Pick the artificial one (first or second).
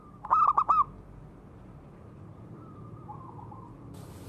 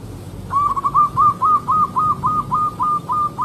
first